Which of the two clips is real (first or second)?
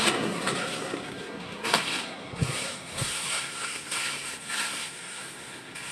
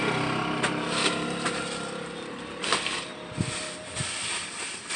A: second